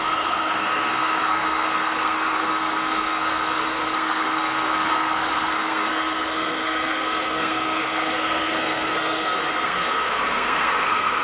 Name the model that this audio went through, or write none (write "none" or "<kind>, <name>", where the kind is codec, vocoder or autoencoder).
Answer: codec, SNAC